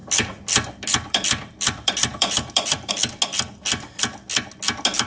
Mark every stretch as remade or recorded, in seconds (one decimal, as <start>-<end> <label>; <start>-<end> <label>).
0.0-2.9 remade; 2.9-5.1 recorded